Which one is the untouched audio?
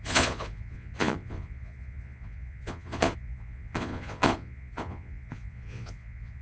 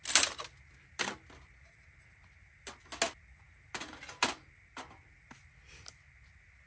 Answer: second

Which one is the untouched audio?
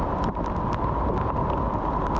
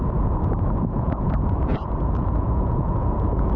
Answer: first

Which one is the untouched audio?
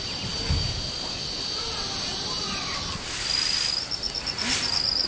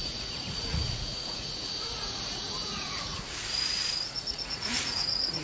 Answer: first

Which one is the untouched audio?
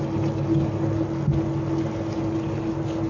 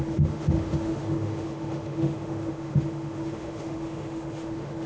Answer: first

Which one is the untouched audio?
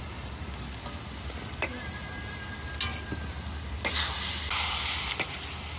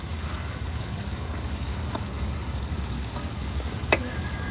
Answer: first